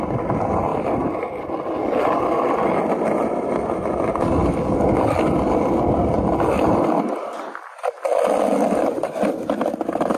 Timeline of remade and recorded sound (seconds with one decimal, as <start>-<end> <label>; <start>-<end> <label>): 0.0-10.2 recorded